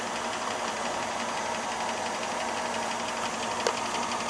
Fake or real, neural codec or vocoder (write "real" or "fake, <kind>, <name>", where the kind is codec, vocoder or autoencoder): real